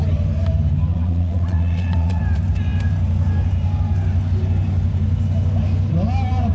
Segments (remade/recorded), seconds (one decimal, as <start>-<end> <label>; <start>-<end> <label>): 0.0-0.9 recorded; 0.9-2.2 remade; 2.2-6.5 recorded